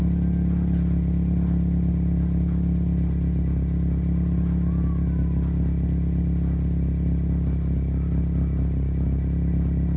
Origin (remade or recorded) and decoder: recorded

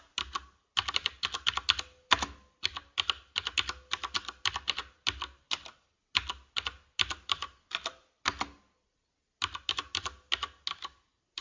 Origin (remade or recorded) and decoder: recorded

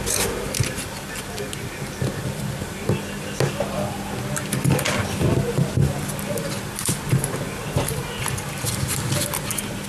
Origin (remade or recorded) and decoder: recorded